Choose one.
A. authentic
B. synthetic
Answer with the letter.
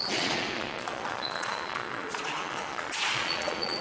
B